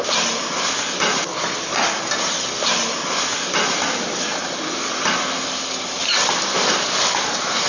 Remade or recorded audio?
recorded